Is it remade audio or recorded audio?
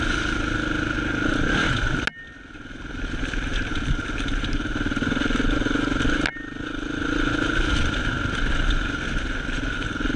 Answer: recorded